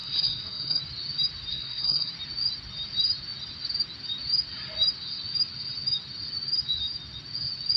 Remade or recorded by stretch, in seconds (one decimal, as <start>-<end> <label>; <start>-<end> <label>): 0.0-0.8 remade; 0.8-1.5 recorded; 1.5-2.1 remade; 2.1-7.8 recorded